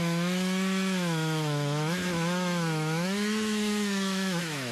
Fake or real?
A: fake